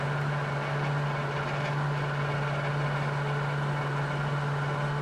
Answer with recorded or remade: recorded